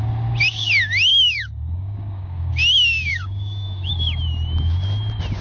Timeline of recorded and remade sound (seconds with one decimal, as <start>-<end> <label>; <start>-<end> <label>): 0.0-1.1 recorded; 1.1-2.5 remade; 2.5-3.1 recorded; 3.1-3.9 remade; 3.9-5.4 recorded